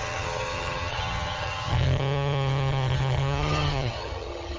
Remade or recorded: remade